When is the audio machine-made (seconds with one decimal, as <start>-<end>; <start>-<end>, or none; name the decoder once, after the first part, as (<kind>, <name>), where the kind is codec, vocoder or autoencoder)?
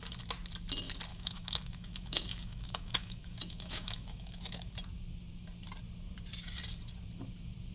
1.1-4.7 (autoencoder, DAC-VAE)